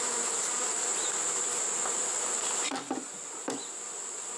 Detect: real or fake real